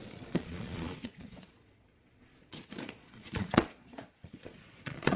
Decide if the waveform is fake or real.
fake